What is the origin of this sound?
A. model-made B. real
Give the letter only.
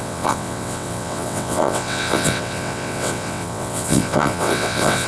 A